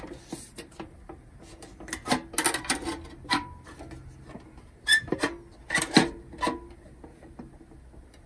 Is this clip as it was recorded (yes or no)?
yes